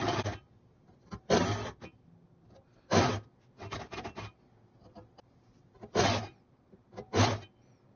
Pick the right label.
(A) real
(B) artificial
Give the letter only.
A